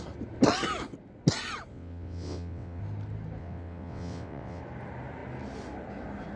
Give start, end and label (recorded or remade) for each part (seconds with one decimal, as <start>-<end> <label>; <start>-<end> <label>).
0.0-1.7 recorded; 1.7-2.8 remade; 2.8-3.4 recorded; 3.4-4.6 remade; 4.6-6.4 recorded